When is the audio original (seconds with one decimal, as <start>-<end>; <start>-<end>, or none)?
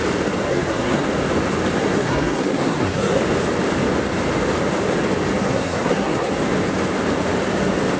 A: 0.0-0.5; 1.1-1.8; 3.2-5.4; 6.3-8.0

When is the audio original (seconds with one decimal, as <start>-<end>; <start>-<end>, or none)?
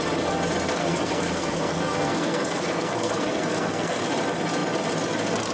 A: 0.0-0.8; 4.0-5.5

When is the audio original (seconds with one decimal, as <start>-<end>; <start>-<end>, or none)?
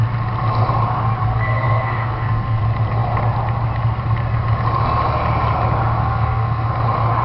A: 0.0-1.3; 2.6-6.0; 6.7-7.2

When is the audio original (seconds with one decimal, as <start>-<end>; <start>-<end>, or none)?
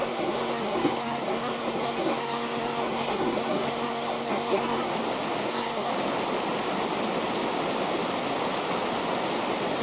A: 4.9-5.5; 5.9-9.8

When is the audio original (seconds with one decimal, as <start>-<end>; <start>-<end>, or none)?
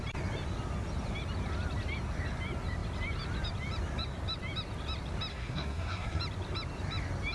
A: 0.0-5.3; 6.2-7.3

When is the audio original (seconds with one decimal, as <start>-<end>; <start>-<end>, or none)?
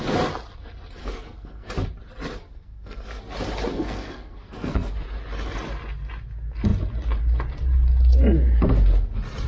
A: 0.0-1.0; 1.7-2.5; 3.2-3.7; 4.9-9.5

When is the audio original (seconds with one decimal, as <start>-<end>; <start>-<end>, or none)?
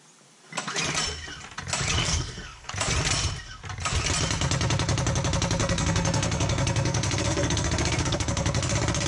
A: 0.0-2.0; 2.7-5.6; 8.6-9.1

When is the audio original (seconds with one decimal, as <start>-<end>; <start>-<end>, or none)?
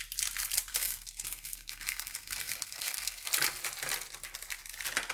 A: 0.0-0.7; 3.3-5.1